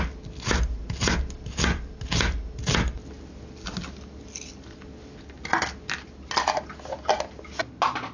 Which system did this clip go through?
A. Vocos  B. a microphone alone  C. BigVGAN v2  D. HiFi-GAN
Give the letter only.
B